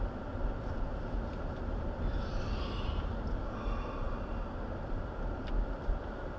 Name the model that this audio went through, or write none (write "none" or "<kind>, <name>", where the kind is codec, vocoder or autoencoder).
none